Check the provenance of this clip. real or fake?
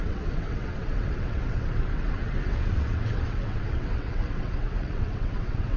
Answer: fake